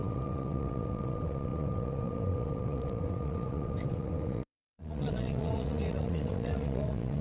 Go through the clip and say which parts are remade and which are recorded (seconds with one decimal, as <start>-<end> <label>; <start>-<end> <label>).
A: 0.0-7.2 remade